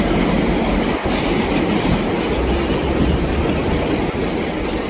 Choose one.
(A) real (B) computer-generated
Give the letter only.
A